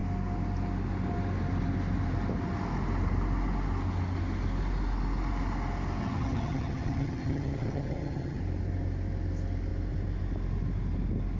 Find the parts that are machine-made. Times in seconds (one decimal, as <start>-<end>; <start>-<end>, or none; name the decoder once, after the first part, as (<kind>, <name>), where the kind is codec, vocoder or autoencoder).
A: 6.0-8.4 (vocoder, HiFi-GAN)